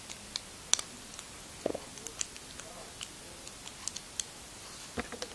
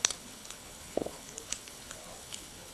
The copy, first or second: second